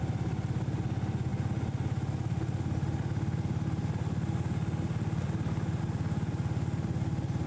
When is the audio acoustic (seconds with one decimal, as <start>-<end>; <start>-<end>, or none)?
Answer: 0.0-7.5

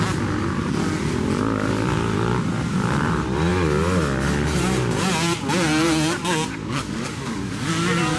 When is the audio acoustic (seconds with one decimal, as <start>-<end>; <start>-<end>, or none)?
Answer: 0.0-6.6; 7.7-8.2

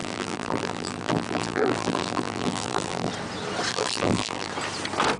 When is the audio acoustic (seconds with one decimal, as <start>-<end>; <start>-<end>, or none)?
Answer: 3.1-3.7; 4.5-5.2

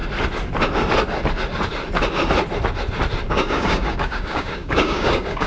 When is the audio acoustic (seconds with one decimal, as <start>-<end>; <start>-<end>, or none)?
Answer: 0.0-3.3

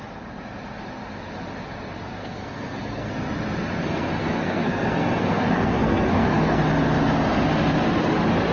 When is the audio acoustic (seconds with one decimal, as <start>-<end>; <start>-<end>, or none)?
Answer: 0.0-2.2; 3.1-3.8; 6.6-8.5

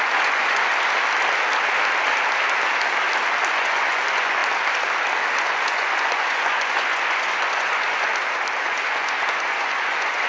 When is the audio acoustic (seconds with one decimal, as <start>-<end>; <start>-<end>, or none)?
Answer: 0.7-3.5; 4.4-5.4; 8.1-8.6